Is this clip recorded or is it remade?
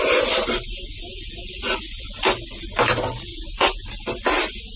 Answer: recorded